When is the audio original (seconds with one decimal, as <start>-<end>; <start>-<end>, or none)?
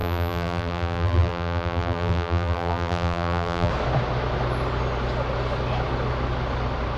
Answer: 3.7-7.0